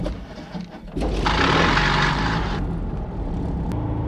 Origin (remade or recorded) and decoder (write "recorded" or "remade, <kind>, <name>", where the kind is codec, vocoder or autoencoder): recorded